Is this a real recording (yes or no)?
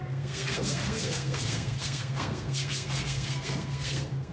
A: no